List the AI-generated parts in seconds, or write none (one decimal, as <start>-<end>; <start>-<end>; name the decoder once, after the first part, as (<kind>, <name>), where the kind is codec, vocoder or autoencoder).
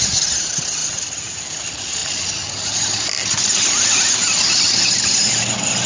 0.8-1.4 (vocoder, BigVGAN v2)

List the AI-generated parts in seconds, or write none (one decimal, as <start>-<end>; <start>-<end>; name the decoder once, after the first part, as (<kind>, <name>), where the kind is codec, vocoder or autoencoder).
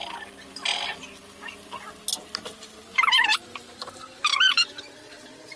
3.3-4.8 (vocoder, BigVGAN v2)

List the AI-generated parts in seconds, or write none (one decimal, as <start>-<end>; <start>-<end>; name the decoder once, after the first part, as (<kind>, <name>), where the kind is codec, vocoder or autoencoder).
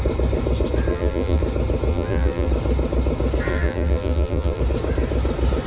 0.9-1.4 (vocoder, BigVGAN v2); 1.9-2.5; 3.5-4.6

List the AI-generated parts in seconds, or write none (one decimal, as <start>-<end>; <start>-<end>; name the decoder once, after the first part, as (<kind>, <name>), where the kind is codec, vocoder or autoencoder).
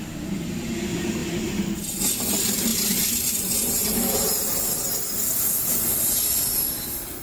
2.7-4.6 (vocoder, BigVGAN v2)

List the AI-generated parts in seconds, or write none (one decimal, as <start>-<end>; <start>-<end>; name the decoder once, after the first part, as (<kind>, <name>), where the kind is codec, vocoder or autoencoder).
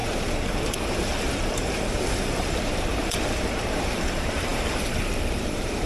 0.0-5.9 (vocoder, BigVGAN v2)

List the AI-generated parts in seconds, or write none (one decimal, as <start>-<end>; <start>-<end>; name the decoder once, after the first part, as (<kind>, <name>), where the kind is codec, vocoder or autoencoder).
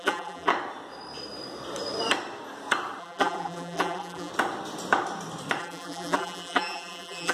0.0-0.5 (vocoder, BigVGAN v2); 3.0-4.3; 5.6-7.3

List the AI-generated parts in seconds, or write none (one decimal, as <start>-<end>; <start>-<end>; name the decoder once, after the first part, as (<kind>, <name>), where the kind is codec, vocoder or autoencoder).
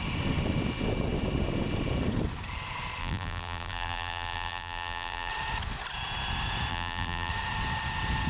3.0-5.3 (vocoder, BigVGAN v2); 6.7-7.3